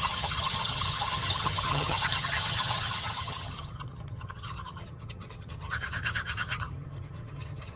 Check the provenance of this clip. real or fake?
fake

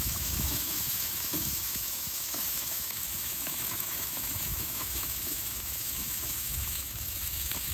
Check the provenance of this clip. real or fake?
fake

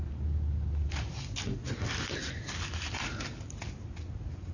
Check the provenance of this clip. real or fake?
real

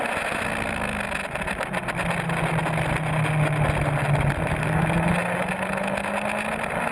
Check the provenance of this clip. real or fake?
real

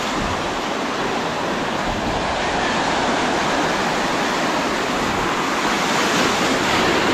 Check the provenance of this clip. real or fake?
real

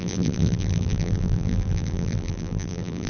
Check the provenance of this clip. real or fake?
fake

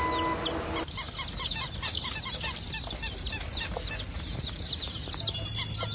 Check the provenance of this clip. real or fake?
real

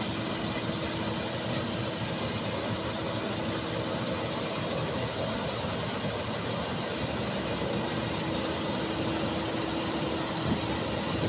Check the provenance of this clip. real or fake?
real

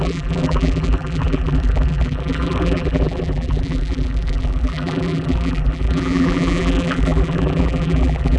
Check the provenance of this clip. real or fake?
fake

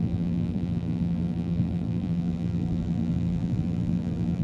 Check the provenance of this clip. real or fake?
fake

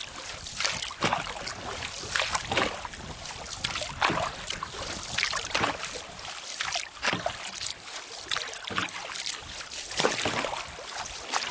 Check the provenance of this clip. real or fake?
real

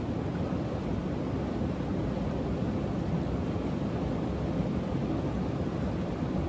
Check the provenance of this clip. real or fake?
real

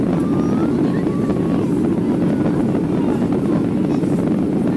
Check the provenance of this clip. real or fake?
real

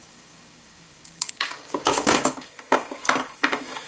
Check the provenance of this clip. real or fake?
fake